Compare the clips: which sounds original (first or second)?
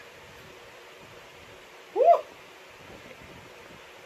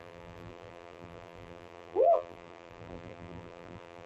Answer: first